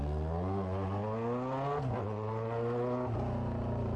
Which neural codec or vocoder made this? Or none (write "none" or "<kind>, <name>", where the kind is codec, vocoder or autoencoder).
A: none